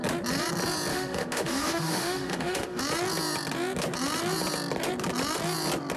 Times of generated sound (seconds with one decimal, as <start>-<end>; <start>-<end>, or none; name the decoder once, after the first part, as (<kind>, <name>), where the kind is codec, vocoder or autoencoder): 0.9-2.8 (autoencoder, DAC-VAE)